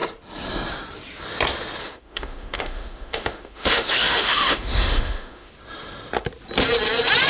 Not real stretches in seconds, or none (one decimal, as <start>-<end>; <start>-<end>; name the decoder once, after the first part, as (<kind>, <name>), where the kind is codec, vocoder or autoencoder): 1.8-5.5 (autoencoder, DAC-VAE)